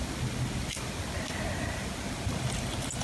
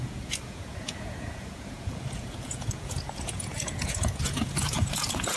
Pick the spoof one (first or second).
second